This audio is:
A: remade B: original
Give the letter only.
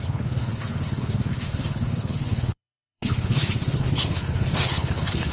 A